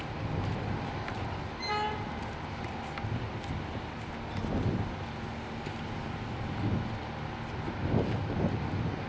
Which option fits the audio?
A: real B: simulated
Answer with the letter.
A